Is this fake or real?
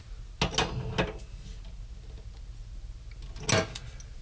real